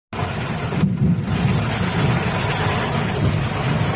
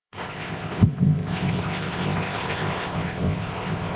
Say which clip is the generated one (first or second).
second